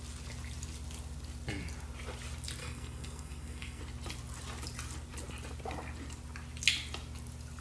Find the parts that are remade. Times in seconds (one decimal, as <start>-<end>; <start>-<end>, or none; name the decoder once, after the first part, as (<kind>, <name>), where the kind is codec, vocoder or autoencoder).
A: 2.6-3.8 (codec, SNAC)